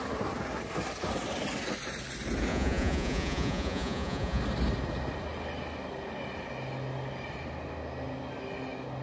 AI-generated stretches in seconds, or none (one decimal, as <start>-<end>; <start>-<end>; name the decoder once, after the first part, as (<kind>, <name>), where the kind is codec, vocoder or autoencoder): 2.5-4.4 (vocoder, Vocos)